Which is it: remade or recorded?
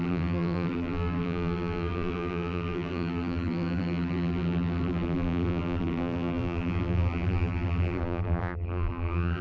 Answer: remade